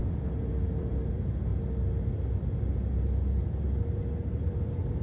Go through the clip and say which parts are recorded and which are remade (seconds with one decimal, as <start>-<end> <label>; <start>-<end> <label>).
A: 0.0-5.0 recorded